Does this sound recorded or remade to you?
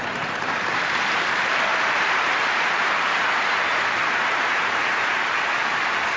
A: remade